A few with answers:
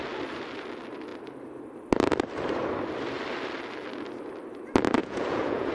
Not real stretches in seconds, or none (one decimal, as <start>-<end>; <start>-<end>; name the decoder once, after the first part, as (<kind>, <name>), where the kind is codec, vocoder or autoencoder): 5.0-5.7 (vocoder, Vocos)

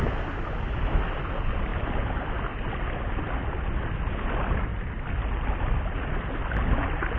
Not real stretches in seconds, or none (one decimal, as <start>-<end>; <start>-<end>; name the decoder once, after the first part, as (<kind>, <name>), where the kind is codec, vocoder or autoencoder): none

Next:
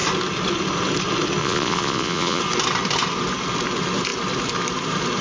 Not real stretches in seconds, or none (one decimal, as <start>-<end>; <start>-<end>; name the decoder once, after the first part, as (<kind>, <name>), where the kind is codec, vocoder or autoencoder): 1.4-2.4 (vocoder, Vocos)

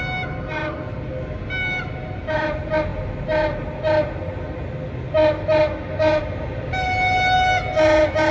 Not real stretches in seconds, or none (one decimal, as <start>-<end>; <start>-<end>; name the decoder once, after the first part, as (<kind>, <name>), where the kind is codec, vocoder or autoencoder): none

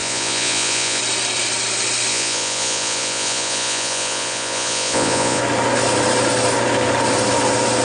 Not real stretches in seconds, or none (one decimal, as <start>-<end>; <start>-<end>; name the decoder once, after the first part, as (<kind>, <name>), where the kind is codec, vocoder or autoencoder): 0.0-1.0 (vocoder, Vocos); 2.1-5.4

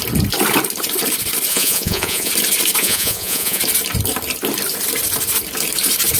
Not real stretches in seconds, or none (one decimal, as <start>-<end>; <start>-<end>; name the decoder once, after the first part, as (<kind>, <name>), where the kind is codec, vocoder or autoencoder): 1.5-2.3 (vocoder, Vocos); 2.8-3.6

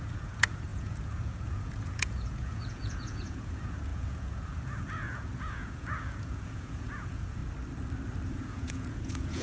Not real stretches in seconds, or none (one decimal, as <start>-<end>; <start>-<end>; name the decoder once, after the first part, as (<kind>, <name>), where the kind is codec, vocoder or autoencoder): 0.0-7.4 (vocoder, Vocos); 8.3-9.4